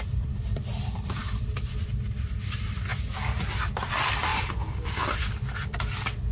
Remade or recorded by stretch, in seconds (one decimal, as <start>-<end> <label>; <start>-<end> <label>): 0.0-6.3 remade